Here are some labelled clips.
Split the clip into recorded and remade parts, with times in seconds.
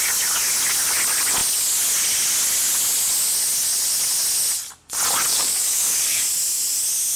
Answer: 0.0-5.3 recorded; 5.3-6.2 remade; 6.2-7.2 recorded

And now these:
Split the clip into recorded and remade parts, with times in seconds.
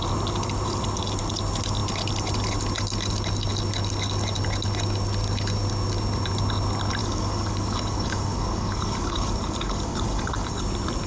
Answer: 0.0-7.0 recorded; 7.0-10.6 remade; 10.6-11.1 recorded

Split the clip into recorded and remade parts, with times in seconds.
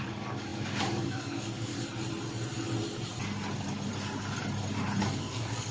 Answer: 0.0-1.7 remade; 1.7-5.0 recorded; 5.0-5.7 remade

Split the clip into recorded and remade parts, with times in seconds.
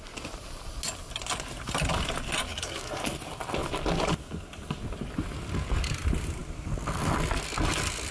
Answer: 0.0-2.5 recorded; 2.5-3.1 remade; 3.1-8.1 recorded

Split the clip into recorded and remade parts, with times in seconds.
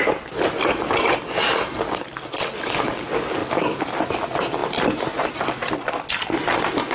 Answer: 0.0-3.4 recorded; 3.4-4.0 remade; 4.0-6.9 recorded